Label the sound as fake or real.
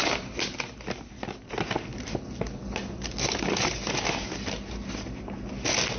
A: real